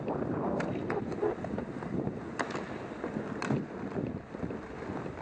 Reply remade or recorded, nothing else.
remade